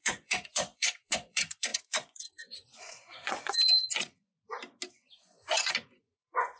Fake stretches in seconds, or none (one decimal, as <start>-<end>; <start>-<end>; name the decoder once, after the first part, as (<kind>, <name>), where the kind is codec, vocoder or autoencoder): 0.0-4.3 (vocoder, Vocos); 4.9-6.6

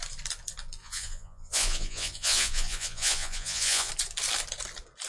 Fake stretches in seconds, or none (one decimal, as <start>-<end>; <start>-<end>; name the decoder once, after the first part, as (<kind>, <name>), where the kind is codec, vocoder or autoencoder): 0.8-3.9 (vocoder, Vocos)

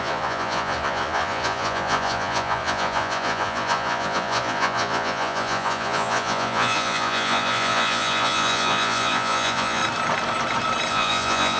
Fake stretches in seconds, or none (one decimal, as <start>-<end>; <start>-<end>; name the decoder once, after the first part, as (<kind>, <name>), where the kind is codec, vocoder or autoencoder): 0.0-9.8 (vocoder, Vocos); 10.9-11.6

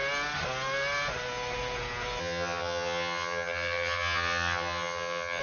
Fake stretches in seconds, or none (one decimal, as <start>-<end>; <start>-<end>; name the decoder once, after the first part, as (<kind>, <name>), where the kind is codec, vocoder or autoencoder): 2.2-5.4 (vocoder, HiFi-GAN)

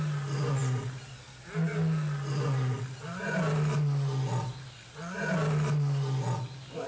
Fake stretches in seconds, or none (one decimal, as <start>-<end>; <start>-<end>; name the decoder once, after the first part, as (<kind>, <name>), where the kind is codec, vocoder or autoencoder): none